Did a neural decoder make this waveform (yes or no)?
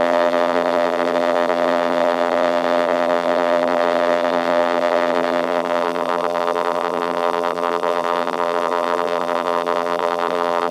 yes